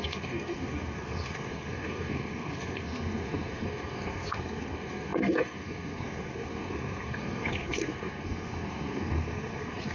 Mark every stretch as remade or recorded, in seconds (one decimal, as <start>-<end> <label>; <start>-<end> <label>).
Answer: 0.0-9.9 remade